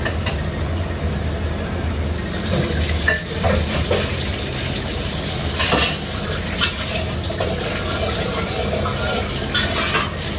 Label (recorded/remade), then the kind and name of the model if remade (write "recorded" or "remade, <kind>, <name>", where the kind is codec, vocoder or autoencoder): recorded